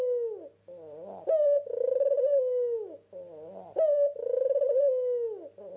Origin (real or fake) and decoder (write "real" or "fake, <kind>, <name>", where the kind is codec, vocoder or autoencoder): real